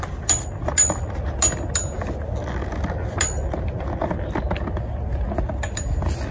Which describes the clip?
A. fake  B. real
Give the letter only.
B